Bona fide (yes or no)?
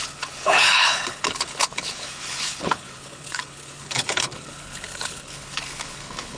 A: no